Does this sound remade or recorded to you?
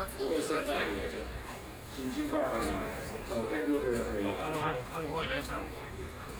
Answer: remade